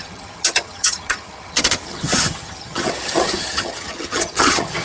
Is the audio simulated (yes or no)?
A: yes